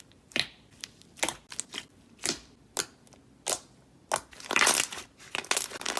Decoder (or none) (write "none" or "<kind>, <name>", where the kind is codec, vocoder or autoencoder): none